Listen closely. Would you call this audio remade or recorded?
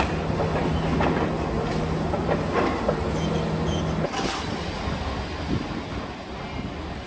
recorded